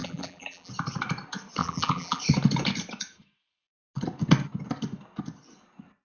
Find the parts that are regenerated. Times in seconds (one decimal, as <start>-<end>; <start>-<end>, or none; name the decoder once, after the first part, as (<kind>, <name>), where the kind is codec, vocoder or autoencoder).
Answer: 0.0-0.7 (vocoder, BigVGAN v2); 1.6-2.2

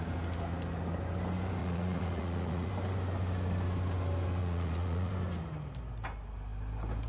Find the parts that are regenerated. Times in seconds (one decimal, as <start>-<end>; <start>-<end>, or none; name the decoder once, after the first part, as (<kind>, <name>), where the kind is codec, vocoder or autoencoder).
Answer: 1.6-2.7 (vocoder, Vocos); 4.4-5.1

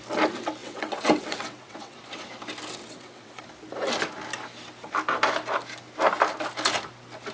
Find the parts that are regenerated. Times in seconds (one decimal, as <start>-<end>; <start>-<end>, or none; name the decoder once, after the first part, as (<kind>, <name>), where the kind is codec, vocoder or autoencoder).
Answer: 0.6-2.0 (vocoder, WaveNeXt); 2.8-3.4

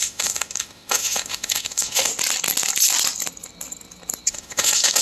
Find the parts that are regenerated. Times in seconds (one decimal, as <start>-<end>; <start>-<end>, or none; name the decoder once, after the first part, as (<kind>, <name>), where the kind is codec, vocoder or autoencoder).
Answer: 0.0-2.1 (autoencoder, DAC-VAE); 4.3-5.0

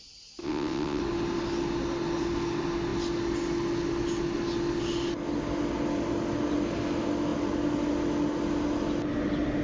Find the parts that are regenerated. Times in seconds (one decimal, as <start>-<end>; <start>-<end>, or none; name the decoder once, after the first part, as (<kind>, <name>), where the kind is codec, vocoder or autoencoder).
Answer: 0.4-1.0 (vocoder, WaveNeXt)